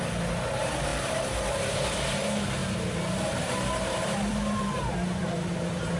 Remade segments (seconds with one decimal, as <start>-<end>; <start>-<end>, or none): 0.0-2.6; 3.4-6.0